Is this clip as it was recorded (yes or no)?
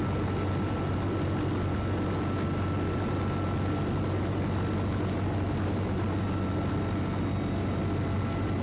yes